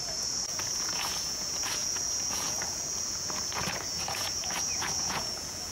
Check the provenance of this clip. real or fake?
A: fake